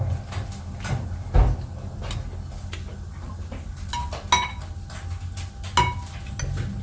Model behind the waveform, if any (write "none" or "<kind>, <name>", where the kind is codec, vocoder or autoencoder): none